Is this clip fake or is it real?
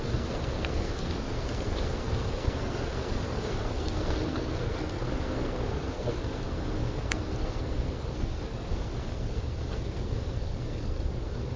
fake